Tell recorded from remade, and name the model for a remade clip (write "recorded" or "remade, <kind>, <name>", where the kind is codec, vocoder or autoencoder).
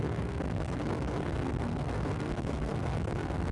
remade, codec, SNAC